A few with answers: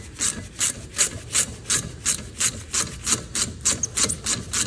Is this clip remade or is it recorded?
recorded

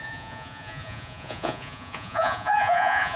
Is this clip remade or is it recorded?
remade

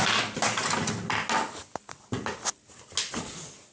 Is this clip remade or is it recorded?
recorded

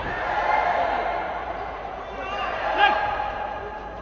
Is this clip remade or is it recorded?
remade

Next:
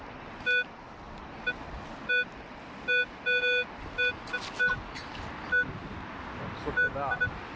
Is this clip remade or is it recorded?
recorded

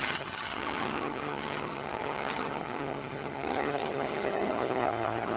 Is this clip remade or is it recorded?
remade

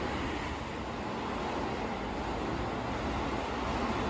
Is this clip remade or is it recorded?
recorded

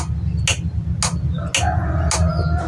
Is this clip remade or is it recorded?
recorded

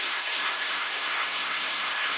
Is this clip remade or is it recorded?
remade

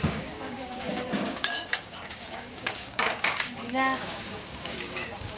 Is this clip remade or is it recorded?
remade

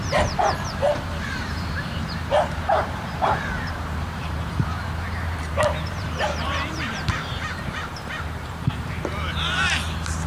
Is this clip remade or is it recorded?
remade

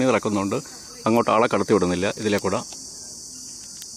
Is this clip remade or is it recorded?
recorded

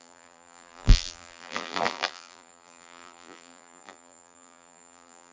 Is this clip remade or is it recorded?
remade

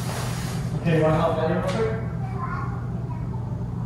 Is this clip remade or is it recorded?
recorded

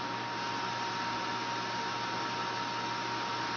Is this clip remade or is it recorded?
recorded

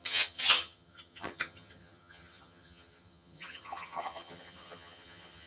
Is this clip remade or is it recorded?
remade